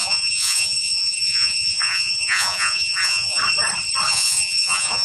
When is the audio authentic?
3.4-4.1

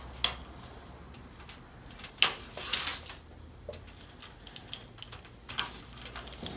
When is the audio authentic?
0.0-6.6

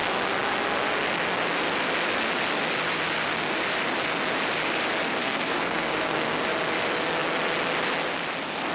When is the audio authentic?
0.0-5.2; 6.4-8.7

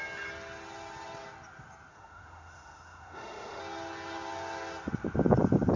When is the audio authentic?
0.0-1.9; 3.6-5.8